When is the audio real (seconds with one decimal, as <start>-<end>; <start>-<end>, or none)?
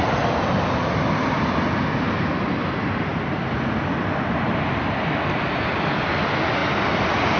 0.0-7.4